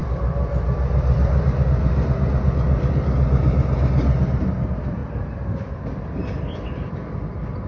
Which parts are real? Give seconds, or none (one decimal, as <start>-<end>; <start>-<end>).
0.0-7.7